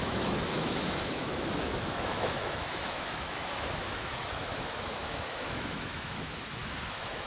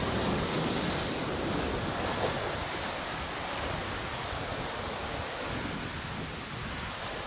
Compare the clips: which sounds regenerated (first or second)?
first